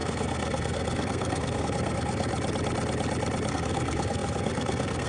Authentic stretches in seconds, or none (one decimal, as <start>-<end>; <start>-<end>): 2.3-3.5

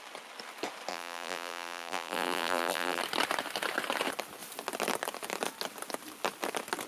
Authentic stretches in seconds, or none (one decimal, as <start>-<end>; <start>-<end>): 0.0-0.9; 3.0-6.9

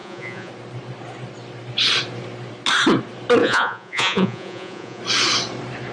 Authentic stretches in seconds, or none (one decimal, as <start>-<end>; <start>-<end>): 0.5-3.4; 5.0-5.9

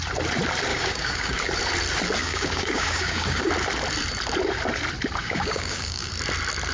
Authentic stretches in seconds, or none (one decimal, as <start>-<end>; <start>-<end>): 0.0-0.7; 1.5-2.2; 3.5-5.2; 6.1-6.7